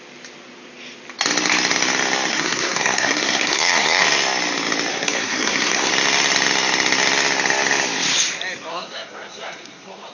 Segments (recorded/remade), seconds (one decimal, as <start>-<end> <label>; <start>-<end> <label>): 0.0-2.3 recorded; 2.3-4.0 remade; 4.0-4.9 recorded; 4.9-5.9 remade; 5.9-8.7 recorded; 8.7-10.1 remade